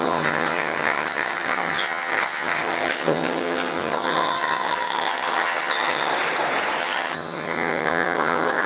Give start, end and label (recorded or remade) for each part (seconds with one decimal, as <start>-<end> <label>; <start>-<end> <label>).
0.0-6.1 remade; 6.1-6.8 recorded; 6.8-8.7 remade